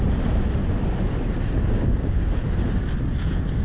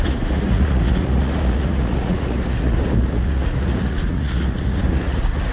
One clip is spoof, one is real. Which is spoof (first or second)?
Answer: second